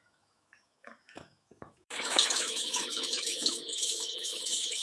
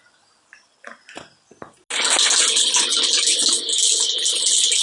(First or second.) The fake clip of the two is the first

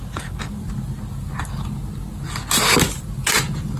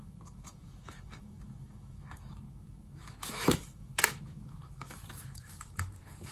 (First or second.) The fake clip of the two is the second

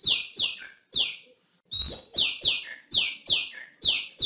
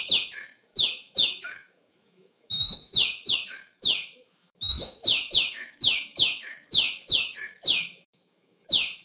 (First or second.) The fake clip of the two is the second